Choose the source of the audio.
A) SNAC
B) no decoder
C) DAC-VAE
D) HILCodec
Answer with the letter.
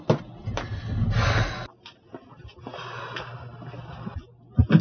B